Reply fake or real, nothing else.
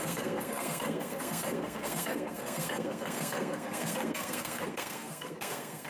fake